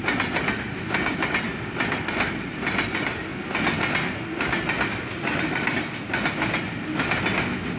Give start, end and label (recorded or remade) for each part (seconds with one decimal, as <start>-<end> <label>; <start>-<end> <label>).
0.0-7.8 recorded